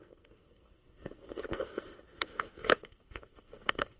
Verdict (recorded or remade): remade